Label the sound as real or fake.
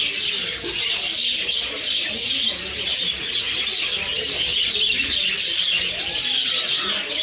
real